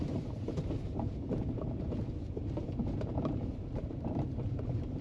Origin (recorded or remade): remade